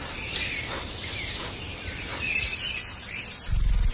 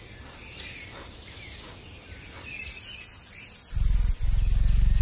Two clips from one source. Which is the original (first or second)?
second